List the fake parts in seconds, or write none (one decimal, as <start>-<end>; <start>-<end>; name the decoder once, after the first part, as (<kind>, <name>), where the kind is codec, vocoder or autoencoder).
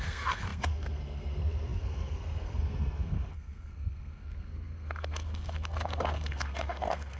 0.0-7.2 (codec, SNAC)